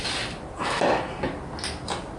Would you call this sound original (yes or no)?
yes